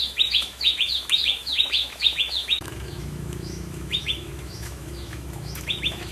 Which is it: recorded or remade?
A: remade